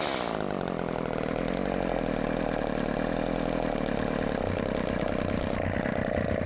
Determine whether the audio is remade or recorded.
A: recorded